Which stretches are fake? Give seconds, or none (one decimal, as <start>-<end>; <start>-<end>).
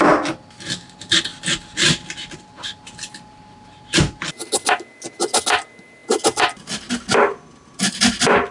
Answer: none